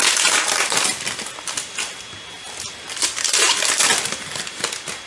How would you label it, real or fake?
real